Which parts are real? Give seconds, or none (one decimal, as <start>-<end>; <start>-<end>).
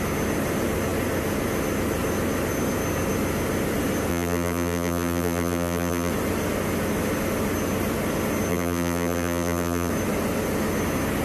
0.0-4.1; 6.1-8.5; 9.9-11.2